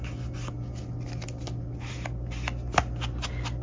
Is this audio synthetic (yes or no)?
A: no